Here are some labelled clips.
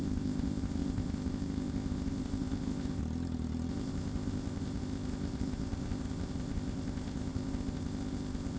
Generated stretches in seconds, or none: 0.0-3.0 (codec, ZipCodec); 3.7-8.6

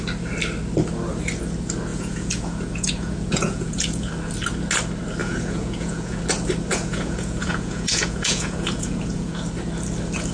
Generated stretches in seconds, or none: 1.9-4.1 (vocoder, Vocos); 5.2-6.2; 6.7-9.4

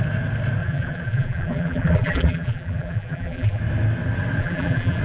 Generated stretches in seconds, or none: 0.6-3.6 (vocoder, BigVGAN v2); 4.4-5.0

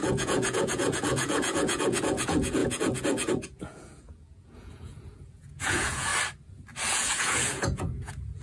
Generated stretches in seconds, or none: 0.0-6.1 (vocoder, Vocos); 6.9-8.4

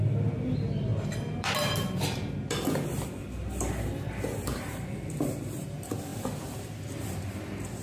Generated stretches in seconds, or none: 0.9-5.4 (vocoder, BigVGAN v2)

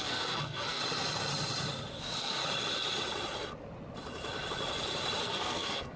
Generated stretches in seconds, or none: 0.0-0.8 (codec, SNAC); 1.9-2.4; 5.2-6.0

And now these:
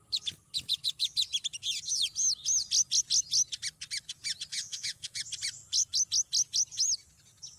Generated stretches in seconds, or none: 4.5-5.2 (vocoder, Vocos)